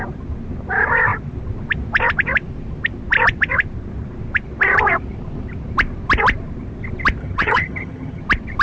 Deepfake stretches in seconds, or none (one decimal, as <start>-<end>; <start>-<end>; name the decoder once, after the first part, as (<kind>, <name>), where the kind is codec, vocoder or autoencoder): 7.2-8.2 (vocoder, HiFi-GAN)